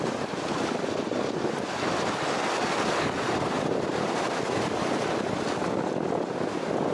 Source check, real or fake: real